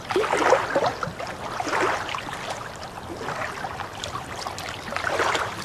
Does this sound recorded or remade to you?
recorded